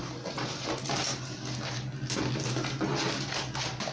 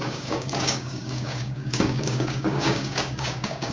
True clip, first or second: first